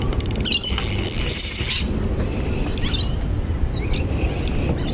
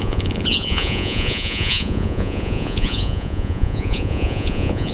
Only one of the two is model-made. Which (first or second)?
second